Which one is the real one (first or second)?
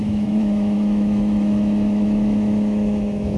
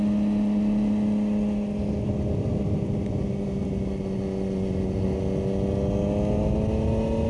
second